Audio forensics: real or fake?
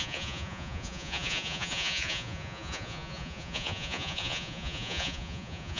fake